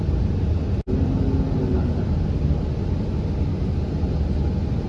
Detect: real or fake real